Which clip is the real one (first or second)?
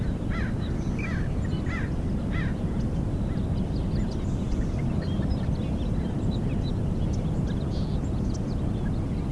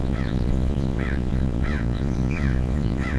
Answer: first